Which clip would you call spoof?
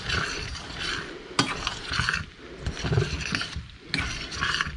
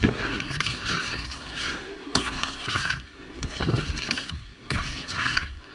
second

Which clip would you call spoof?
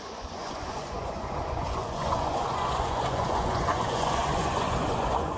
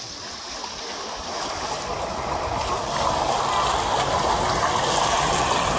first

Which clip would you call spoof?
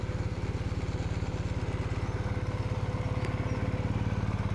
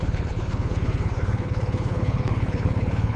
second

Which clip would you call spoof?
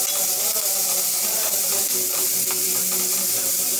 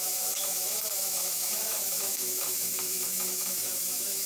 second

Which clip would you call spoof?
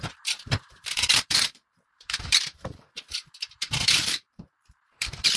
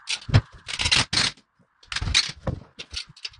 first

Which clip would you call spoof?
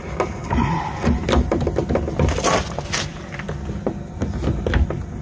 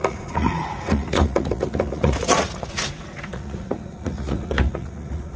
second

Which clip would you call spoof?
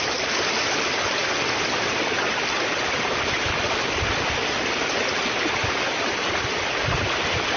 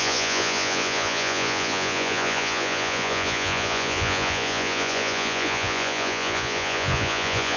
second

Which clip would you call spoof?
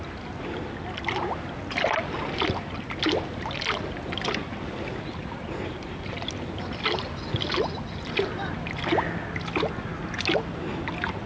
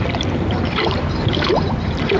second